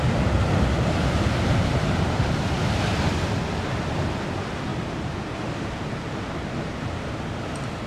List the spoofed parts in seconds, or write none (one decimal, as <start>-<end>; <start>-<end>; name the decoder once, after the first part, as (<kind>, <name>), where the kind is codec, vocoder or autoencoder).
1.7-2.6 (vocoder, BigVGAN v2); 4.7-6.8